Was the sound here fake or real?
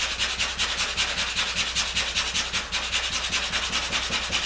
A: real